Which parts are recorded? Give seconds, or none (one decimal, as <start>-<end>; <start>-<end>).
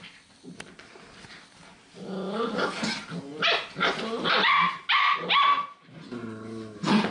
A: 0.0-7.1